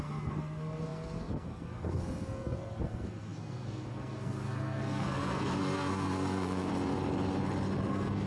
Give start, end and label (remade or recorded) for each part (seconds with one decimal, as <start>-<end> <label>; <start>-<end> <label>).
0.0-6.7 remade; 6.7-7.9 recorded; 7.9-8.3 remade